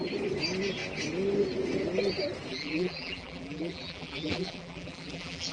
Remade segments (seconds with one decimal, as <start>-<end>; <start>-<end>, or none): 2.5-5.5